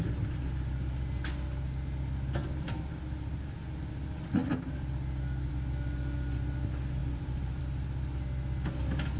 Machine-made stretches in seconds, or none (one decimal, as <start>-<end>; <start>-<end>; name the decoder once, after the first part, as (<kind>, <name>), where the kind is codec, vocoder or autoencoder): 2.4-2.9 (vocoder, BigVGAN v2); 7.0-7.6